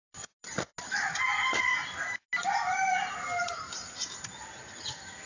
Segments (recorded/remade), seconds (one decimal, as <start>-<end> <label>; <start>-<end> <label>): 0.0-5.3 recorded